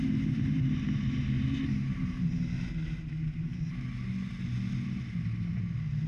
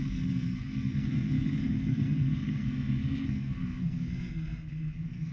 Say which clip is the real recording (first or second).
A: first